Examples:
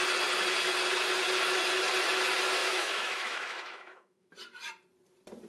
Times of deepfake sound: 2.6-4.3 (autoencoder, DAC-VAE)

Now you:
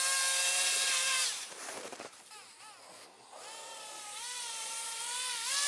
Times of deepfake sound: 0.5-2.6 (vocoder, BigVGAN v2); 3.6-5.0